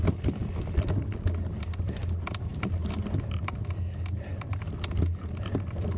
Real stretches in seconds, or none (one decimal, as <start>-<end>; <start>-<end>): 0.0-6.0